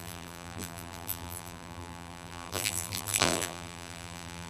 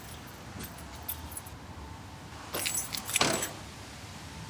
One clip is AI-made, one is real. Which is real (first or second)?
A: second